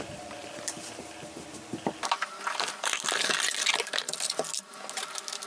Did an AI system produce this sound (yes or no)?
no